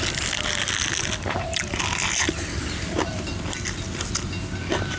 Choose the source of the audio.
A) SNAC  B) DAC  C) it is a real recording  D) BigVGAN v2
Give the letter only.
C